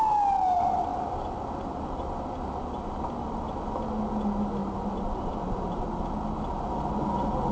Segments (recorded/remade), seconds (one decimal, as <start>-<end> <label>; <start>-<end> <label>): 0.0-4.6 recorded; 4.6-6.0 remade; 6.0-7.5 recorded